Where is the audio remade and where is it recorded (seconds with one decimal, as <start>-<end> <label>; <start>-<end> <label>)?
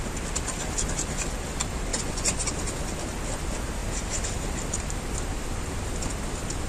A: 0.0-1.9 recorded; 1.9-2.5 remade; 2.5-6.7 recorded